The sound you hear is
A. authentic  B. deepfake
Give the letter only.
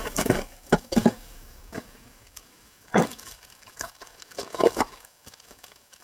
B